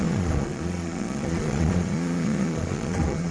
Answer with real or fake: fake